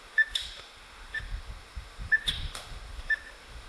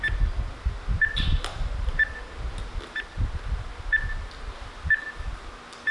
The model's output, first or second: first